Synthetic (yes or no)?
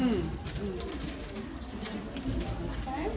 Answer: no